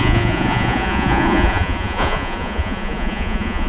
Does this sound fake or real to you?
fake